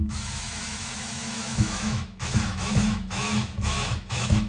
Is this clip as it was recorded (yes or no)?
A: no